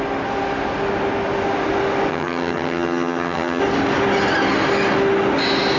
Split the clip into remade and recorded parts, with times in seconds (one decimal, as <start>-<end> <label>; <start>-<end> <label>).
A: 0.0-2.1 recorded; 2.1-3.6 remade; 3.6-5.8 recorded